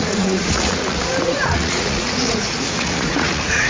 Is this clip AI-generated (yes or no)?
yes